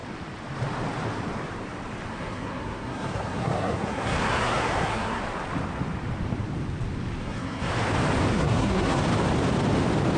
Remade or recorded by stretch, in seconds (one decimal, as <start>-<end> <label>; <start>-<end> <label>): 0.0-2.1 recorded; 2.1-5.2 remade; 5.2-7.2 recorded; 7.2-7.7 remade; 7.7-8.3 recorded; 8.3-9.0 remade; 9.0-10.2 recorded